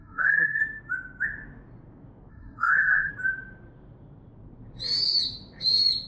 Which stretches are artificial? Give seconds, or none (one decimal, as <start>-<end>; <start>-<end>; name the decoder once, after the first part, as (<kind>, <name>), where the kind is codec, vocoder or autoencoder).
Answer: 0.0-0.6 (codec, SNAC); 2.3-3.1